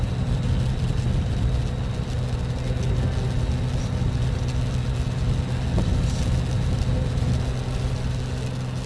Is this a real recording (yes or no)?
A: yes